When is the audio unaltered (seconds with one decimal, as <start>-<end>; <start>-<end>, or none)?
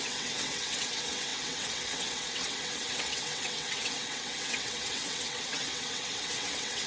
none